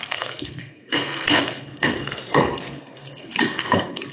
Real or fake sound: fake